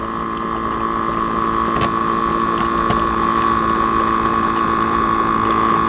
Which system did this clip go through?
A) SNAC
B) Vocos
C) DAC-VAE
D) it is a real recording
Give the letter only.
D